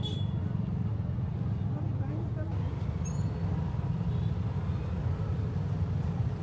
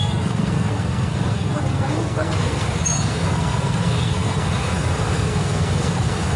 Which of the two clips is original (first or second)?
first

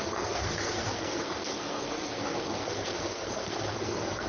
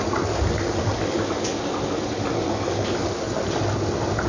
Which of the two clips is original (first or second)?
second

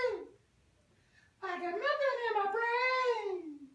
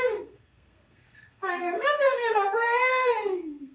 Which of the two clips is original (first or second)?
first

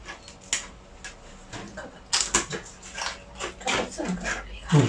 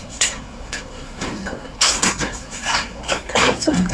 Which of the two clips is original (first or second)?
first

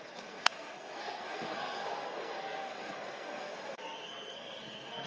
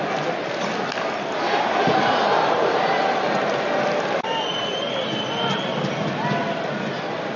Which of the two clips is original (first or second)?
second